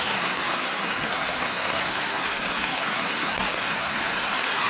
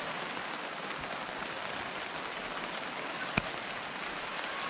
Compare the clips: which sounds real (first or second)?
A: second